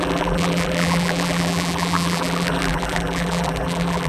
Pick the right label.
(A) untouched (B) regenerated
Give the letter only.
B